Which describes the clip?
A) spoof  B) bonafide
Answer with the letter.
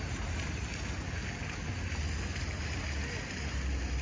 B